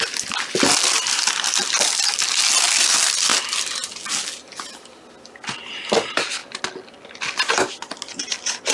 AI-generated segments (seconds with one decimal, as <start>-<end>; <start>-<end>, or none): none